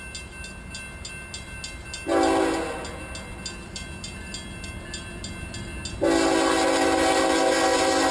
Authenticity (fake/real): real